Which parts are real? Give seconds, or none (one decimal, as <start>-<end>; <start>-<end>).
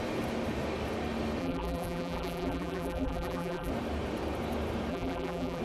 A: 0.0-1.4; 3.7-4.9